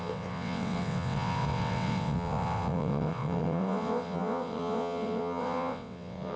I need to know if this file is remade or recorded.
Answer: remade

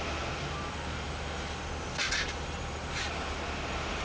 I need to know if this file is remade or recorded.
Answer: recorded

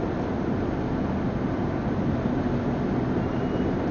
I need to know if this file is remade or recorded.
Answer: recorded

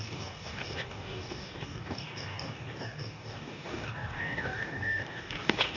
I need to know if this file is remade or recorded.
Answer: remade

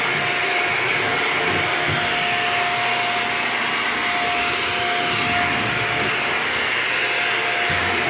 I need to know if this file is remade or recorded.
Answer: recorded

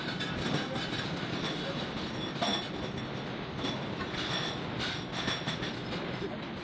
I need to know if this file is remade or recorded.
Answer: recorded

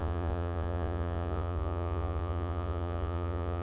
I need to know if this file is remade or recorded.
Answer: remade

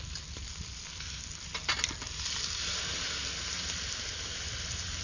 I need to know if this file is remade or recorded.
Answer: recorded